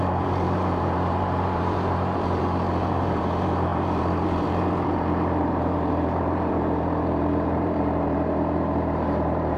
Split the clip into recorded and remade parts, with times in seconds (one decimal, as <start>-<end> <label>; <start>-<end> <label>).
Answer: 0.0-9.6 remade